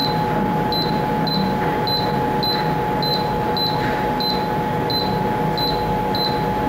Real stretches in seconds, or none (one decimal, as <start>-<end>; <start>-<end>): 0.0-6.7